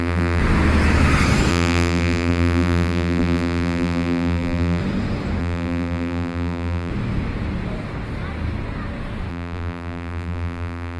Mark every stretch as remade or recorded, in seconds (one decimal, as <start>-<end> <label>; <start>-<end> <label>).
0.0-0.4 remade; 0.4-1.5 recorded; 1.5-4.8 remade; 4.8-5.4 recorded; 5.4-6.9 remade; 6.9-9.3 recorded; 9.3-11.0 remade